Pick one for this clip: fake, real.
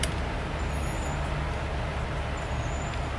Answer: real